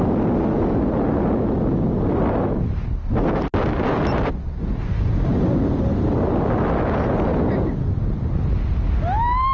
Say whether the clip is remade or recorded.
recorded